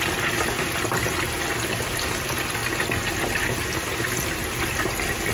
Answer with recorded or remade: recorded